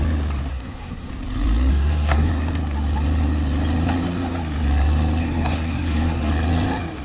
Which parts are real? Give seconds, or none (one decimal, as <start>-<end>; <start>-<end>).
0.0-0.5; 1.1-1.7; 2.3-5.2; 6.3-7.0